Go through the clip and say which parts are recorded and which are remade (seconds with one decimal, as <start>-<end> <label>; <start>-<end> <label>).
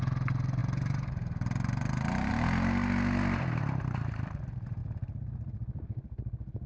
0.0-4.8 recorded; 4.8-6.7 remade